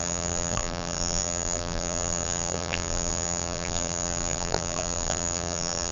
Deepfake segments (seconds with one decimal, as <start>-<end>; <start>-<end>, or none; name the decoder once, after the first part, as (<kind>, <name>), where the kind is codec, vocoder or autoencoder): 0.0-5.9 (vocoder, BigVGAN v2)